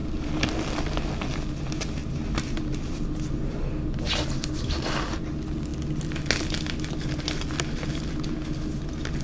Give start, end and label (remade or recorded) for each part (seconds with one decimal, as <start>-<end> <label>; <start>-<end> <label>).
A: 0.0-9.2 recorded